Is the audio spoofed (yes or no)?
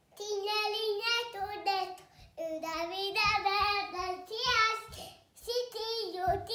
no